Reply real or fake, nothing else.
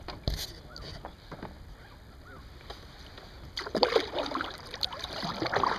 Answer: real